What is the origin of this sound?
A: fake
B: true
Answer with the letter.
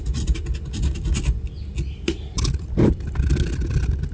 B